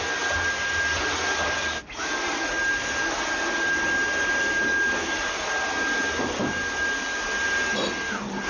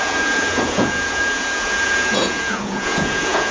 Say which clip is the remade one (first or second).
second